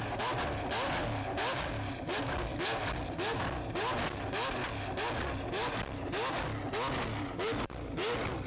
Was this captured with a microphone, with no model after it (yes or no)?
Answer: yes